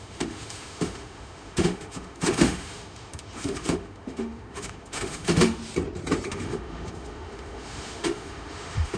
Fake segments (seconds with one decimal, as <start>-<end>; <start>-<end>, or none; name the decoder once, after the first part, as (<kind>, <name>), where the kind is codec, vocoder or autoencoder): 0.0-5.6 (autoencoder, DAC-VAE); 6.3-9.0